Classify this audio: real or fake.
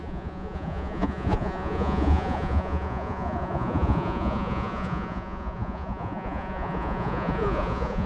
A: fake